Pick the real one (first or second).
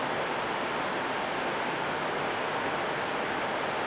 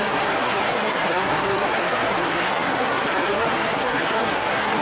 first